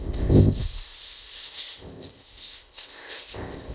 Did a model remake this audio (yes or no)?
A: yes